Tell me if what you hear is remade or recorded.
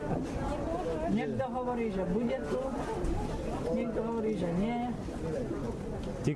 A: recorded